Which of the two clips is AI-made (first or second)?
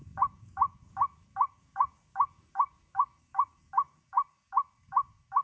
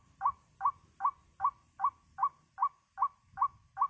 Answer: first